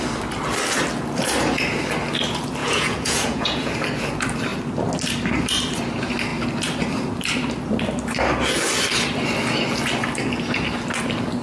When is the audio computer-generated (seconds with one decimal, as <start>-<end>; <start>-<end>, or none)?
2.6-3.7